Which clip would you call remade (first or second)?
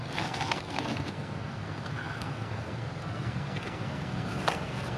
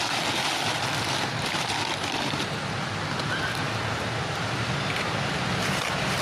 first